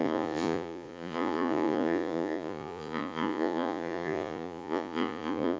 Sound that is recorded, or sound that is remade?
remade